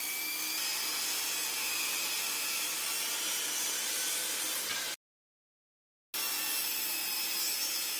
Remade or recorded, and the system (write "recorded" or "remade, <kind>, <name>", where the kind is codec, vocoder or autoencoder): recorded